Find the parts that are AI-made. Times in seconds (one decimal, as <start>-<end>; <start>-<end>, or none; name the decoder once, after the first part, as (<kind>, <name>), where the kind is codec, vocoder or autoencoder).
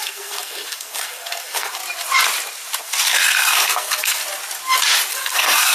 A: 0.0-1.8 (codec, SNAC); 2.8-4.2; 5.1-5.7